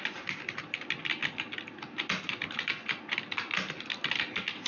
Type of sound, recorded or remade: recorded